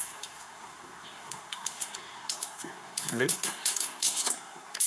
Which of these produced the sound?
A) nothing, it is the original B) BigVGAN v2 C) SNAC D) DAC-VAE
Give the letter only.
C